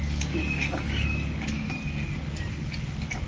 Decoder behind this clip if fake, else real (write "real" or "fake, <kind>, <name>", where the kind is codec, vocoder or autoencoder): fake, codec, DAC